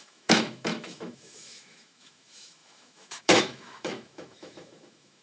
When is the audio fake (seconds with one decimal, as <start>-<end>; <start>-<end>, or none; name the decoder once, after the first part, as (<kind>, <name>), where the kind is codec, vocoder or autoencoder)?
0.0-5.2 (autoencoder, DAC-VAE)